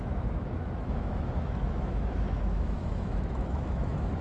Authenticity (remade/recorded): remade